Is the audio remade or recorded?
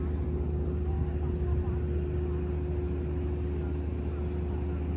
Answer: recorded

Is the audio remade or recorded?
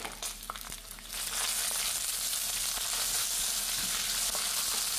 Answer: recorded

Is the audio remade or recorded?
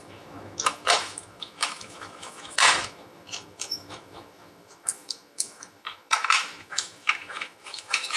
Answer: remade